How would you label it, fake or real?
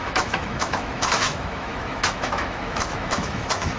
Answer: fake